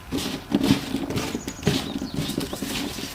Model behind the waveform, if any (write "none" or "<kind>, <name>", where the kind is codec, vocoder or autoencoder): none